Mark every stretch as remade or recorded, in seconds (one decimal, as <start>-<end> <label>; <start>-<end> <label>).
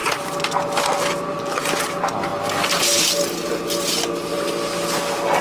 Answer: 0.0-5.4 recorded